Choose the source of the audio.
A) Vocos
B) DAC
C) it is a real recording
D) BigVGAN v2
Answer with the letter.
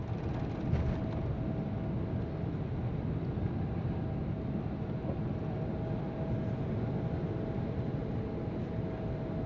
C